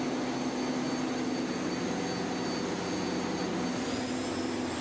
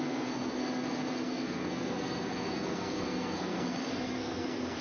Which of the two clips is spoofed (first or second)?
second